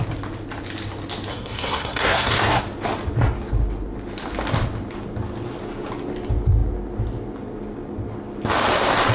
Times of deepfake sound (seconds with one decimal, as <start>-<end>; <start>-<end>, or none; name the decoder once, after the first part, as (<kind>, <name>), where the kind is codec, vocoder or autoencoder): 1.3-2.6 (codec, SNAC)